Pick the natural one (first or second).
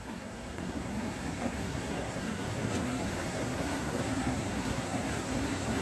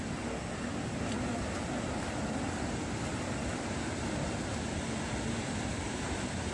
second